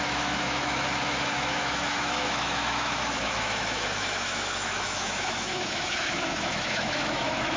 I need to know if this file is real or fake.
fake